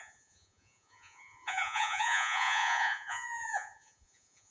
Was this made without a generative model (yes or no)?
no